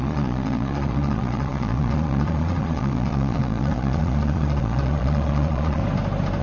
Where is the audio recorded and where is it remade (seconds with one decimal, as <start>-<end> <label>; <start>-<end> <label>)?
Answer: 0.0-5.8 remade; 5.8-6.4 recorded